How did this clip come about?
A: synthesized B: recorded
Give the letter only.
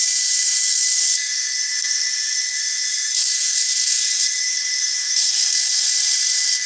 A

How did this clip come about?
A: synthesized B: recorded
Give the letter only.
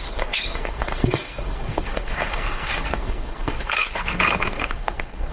A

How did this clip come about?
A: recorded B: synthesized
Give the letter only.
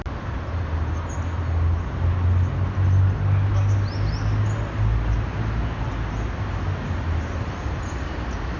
A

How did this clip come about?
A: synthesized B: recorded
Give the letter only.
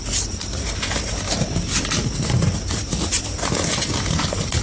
B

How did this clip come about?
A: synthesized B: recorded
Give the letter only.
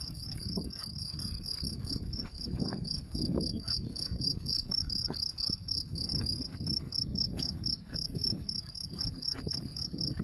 A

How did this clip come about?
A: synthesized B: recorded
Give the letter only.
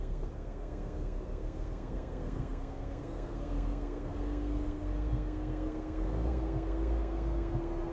A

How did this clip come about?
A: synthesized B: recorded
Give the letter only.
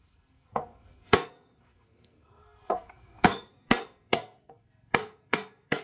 A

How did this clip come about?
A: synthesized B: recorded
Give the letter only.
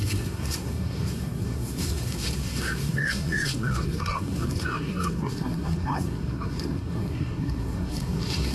A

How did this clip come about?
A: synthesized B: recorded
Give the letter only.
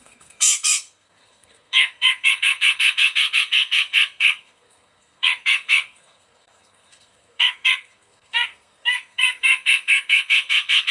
A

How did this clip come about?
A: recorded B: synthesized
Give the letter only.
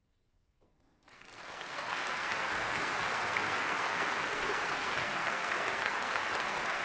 B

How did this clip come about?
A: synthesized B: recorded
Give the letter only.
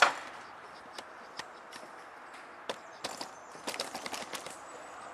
B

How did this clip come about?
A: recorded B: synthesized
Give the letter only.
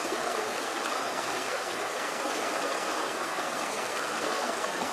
B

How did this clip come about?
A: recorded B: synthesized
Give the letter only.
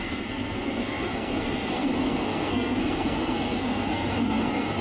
B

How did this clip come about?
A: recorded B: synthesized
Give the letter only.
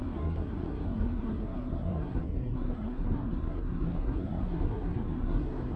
B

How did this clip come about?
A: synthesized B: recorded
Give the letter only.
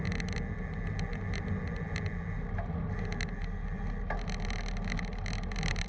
B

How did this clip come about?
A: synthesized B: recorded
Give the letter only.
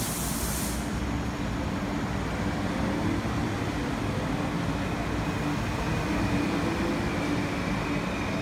B